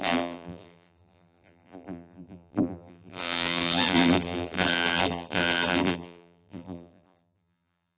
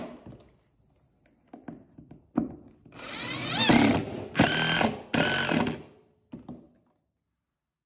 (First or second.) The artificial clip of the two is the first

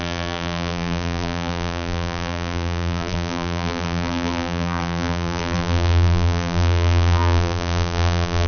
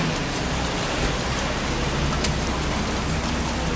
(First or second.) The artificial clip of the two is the first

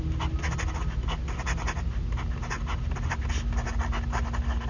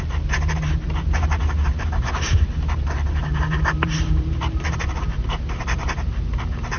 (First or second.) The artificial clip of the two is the second